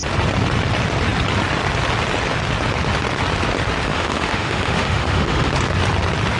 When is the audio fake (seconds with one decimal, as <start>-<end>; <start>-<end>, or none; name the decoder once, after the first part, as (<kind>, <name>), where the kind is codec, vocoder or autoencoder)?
3.9-5.5 (autoencoder, DAC-VAE)

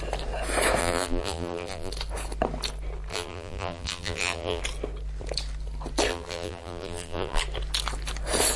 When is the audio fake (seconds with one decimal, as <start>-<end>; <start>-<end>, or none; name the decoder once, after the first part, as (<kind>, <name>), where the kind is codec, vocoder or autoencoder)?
0.8-1.9 (vocoder, BigVGAN v2); 3.1-4.6; 6.1-7.4

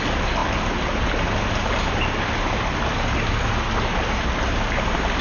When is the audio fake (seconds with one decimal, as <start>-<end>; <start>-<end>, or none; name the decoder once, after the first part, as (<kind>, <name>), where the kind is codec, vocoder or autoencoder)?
none

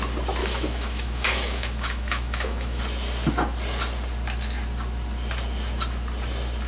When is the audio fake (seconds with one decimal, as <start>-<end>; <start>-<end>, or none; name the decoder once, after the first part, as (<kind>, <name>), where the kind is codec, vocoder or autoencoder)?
0.4-2.8 (autoencoder, DAC-VAE)

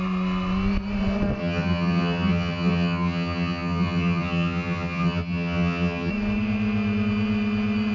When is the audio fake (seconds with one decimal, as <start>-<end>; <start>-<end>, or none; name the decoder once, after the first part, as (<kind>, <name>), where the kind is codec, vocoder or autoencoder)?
1.4-6.1 (vocoder, HiFi-GAN)

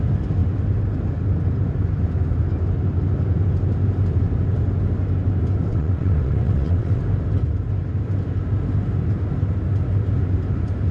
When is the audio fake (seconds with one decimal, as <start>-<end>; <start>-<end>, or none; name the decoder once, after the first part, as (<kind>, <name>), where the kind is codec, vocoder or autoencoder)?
5.7-7.0 (vocoder, WaveNeXt)

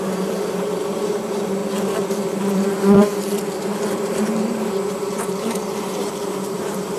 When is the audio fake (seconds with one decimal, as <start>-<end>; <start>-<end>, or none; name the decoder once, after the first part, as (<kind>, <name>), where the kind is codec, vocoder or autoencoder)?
0.0-1.6 (vocoder, BigVGAN v2); 3.9-7.0